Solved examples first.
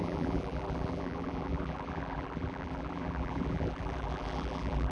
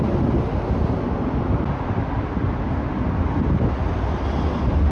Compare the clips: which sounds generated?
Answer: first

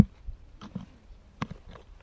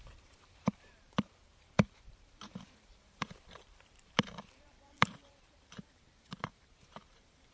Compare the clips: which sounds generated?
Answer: second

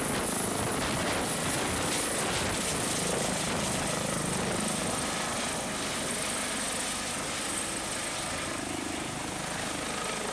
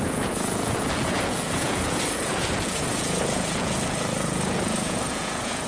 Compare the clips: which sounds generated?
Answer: second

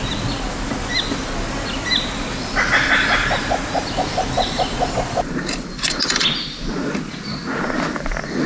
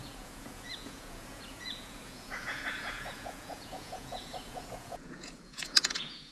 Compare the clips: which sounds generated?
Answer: second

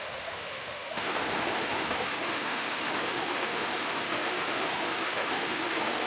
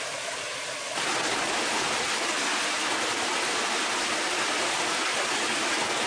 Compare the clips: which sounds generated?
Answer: first